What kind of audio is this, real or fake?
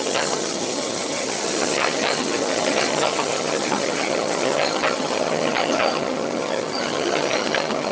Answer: fake